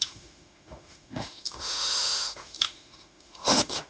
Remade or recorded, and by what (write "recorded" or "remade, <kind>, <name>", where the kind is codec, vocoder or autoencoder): remade, autoencoder, DAC-VAE